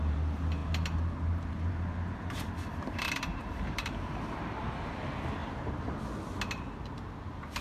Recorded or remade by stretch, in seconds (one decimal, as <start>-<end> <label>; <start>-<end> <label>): 0.0-2.7 recorded; 2.7-4.4 remade; 4.4-5.4 recorded; 5.4-6.0 remade; 6.0-7.6 recorded